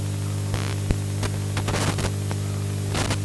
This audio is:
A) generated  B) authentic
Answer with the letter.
B